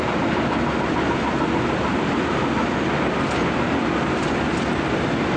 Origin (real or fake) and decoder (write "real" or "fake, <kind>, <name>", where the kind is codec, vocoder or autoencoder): real